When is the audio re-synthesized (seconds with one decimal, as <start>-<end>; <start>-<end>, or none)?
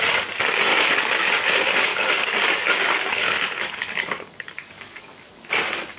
0.7-1.3; 1.9-5.5